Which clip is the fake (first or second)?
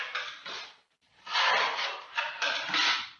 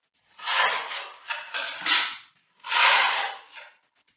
first